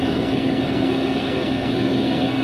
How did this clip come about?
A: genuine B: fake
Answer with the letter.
B